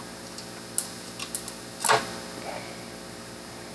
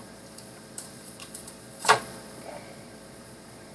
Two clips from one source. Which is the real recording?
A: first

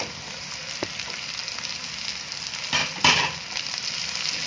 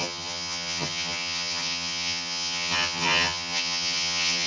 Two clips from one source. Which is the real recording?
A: first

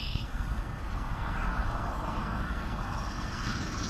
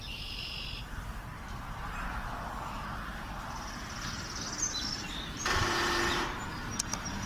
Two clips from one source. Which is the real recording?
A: second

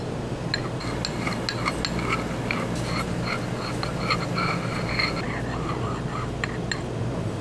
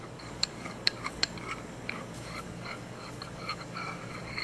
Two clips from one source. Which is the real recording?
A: first